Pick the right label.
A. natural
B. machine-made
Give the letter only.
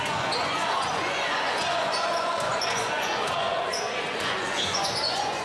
B